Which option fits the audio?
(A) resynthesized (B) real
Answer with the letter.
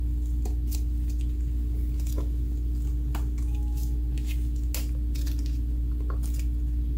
B